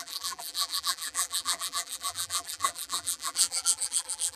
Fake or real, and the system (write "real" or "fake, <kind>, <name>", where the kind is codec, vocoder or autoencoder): fake, vocoder, BigVGAN v2